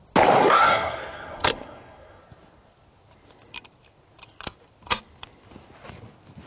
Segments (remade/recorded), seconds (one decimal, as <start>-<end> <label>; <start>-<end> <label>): 0.0-0.4 recorded; 0.4-2.2 remade; 2.2-6.5 recorded